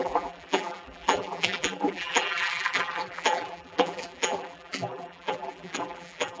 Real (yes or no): no